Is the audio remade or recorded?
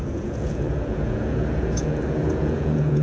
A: remade